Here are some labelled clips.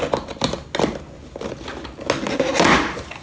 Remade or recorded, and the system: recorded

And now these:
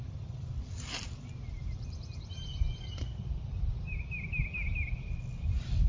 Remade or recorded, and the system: recorded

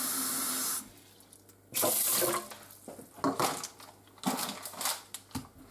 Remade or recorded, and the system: recorded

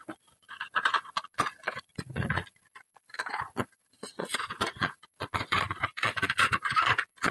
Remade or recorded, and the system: remade, vocoder, Vocos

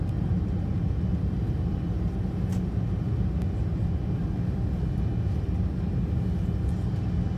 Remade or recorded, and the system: recorded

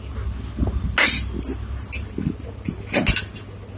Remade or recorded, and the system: recorded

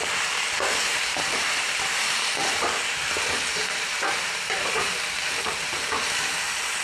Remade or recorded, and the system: remade, vocoder, BigVGAN v2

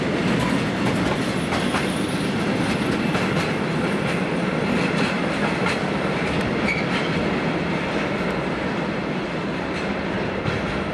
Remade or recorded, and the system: recorded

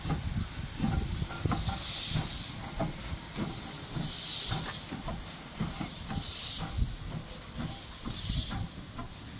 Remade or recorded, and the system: recorded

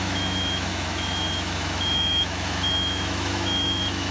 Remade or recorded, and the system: remade, autoencoder, DAC-VAE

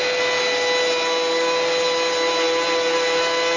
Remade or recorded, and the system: recorded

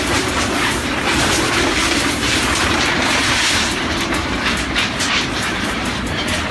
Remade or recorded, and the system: remade, vocoder, BigVGAN v2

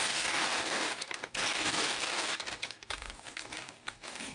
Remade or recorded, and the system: remade, codec, DAC